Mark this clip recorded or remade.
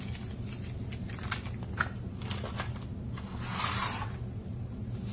recorded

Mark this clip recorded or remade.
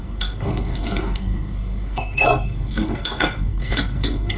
remade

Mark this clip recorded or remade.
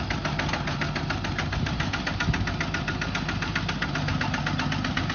recorded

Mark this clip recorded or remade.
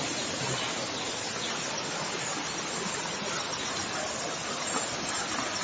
recorded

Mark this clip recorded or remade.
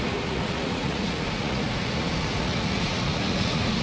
remade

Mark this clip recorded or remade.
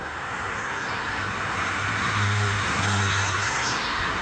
remade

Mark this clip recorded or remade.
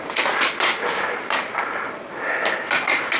recorded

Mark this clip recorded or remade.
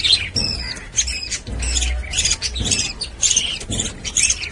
recorded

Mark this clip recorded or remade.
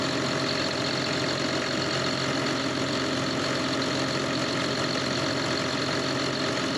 recorded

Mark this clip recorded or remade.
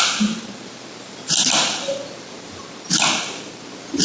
recorded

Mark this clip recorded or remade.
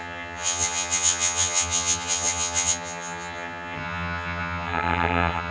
remade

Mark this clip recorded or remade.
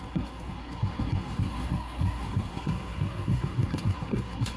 remade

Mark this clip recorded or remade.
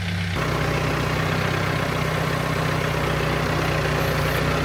recorded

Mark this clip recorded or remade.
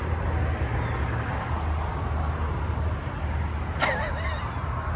recorded